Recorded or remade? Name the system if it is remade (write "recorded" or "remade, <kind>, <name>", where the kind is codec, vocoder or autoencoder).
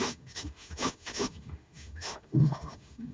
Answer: remade, autoencoder, DAC-VAE